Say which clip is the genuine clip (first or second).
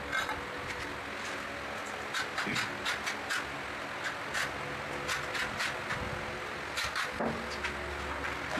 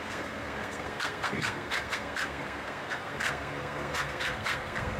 first